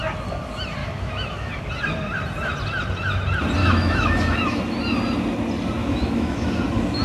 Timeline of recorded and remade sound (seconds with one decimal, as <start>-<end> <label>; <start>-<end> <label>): 0.0-0.8 recorded; 0.8-1.7 remade; 1.7-3.6 recorded; 3.6-4.6 remade; 4.6-5.8 recorded; 5.8-6.6 remade; 6.6-7.0 recorded